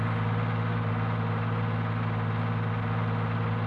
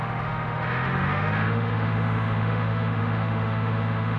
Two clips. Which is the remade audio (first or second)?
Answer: second